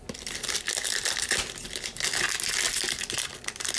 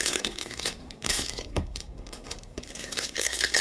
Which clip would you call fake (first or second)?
second